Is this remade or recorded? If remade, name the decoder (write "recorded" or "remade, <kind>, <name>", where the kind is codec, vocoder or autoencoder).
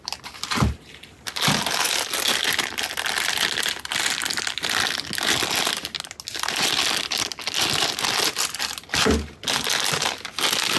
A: recorded